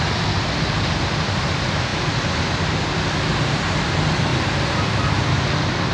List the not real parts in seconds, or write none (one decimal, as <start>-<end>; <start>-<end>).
none